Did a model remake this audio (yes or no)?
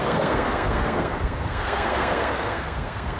yes